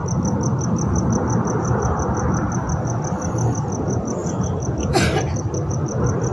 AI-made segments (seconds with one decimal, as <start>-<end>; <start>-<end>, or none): none